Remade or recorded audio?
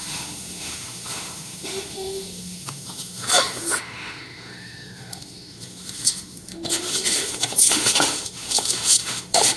remade